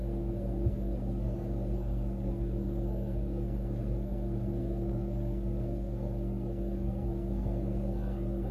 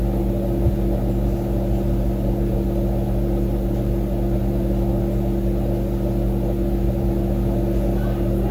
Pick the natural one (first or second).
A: second